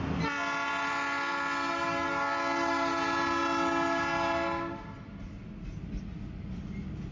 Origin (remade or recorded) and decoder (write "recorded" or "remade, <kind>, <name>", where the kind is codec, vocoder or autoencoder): recorded